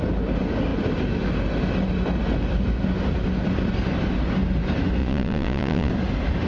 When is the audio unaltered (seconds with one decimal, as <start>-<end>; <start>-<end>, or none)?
0.0-5.0; 5.9-6.5